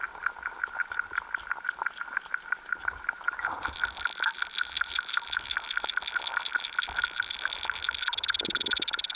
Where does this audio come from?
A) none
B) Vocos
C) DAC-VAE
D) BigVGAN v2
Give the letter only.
D